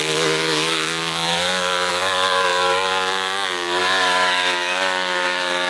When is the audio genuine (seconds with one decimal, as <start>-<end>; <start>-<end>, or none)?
none